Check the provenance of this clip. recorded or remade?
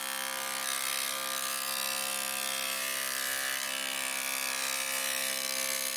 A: recorded